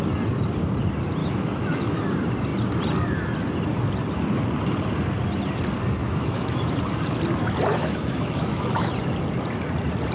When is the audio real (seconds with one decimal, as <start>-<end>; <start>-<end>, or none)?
0.0-1.2; 2.0-6.0; 6.7-7.7; 8.9-10.1